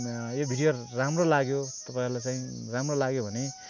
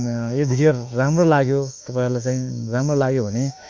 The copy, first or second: second